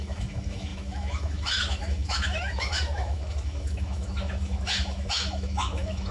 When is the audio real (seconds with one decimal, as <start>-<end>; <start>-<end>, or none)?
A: none